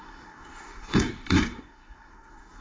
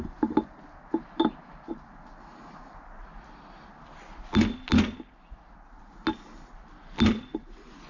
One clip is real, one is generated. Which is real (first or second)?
second